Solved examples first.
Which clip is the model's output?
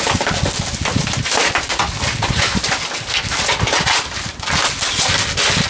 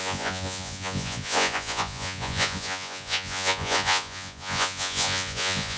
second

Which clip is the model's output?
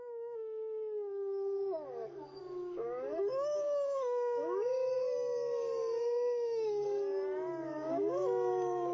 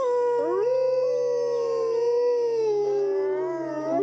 first